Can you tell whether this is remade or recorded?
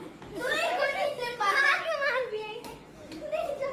remade